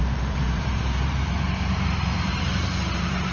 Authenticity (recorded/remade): remade